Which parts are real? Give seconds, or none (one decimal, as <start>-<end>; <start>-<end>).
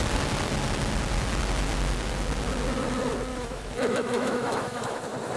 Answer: 0.0-3.3; 5.0-5.4